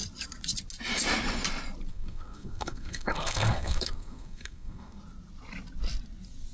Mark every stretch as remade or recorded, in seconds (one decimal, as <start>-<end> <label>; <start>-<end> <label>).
0.0-1.9 recorded; 1.9-5.0 remade; 5.0-6.5 recorded